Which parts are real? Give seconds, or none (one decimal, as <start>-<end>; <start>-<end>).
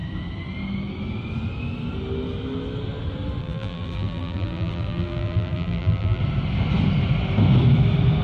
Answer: 0.0-3.4; 6.2-8.2